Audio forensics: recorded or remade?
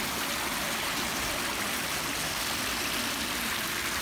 recorded